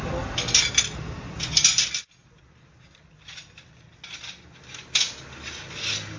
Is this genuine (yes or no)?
yes